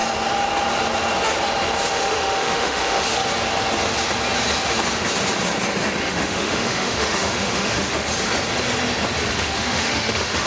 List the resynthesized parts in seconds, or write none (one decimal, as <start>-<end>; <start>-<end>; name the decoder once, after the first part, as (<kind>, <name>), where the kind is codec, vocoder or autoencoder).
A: 1.8-3.2 (autoencoder, DAC-VAE); 6.0-8.1; 9.3-10.5